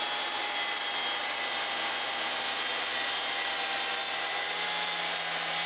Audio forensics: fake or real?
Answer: real